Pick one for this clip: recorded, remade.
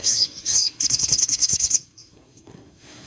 remade